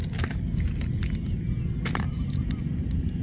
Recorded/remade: recorded